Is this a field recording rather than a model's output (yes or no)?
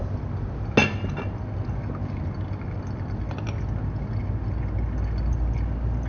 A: yes